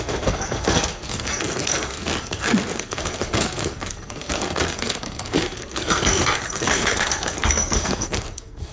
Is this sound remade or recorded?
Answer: remade